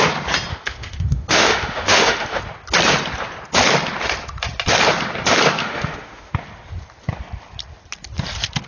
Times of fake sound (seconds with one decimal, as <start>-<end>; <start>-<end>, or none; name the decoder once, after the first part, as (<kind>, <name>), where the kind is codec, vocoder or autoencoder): 0.5-2.4 (autoencoder, DAC-VAE); 5.6-6.3